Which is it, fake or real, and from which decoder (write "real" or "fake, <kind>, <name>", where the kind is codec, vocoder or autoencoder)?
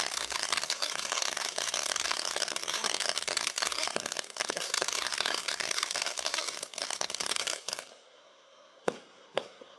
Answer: fake, codec, SNAC